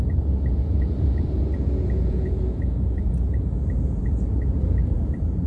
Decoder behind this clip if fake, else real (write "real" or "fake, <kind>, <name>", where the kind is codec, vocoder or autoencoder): fake, vocoder, Vocos